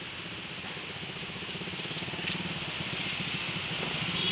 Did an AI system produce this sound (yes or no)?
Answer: no